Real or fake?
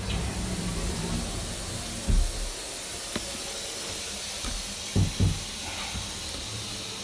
real